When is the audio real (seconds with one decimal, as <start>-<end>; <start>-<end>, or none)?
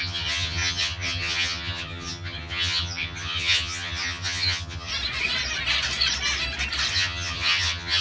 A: 4.9-6.9